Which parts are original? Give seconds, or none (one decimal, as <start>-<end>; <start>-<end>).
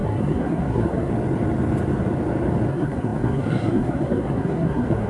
1.1-2.7